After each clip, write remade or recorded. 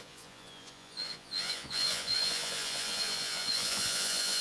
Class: remade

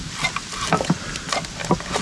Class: remade